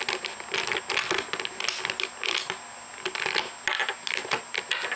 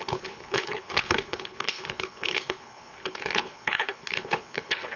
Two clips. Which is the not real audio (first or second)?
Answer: second